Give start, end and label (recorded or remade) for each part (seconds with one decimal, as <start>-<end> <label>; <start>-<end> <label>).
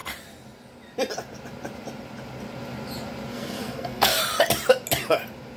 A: 0.0-3.3 recorded; 3.3-4.2 remade; 4.2-5.6 recorded